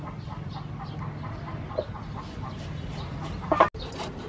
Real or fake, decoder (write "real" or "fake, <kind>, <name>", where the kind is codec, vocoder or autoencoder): real